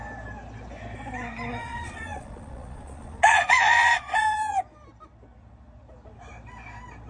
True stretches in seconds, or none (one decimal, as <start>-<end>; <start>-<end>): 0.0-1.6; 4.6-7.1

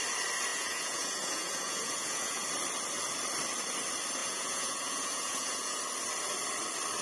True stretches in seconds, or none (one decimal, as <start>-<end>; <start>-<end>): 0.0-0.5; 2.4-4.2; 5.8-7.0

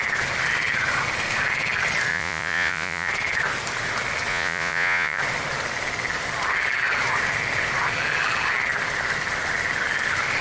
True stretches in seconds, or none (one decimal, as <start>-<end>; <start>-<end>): 0.0-2.1; 3.1-4.3; 5.2-10.4